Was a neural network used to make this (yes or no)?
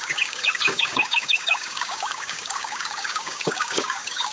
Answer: yes